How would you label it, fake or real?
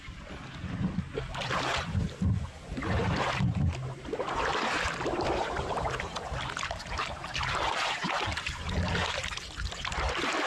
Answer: real